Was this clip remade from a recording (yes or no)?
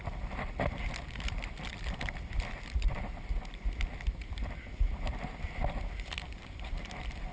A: no